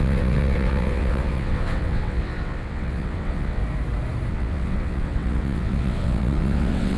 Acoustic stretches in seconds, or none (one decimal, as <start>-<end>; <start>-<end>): 3.6-4.3